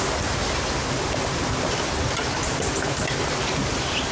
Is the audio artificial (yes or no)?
no